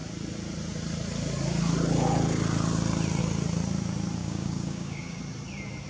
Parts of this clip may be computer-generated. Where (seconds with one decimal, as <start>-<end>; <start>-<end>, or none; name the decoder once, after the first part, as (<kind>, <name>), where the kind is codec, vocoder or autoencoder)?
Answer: 4.2-5.2 (codec, DAC)